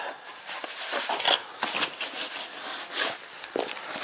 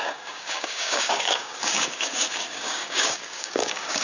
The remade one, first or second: second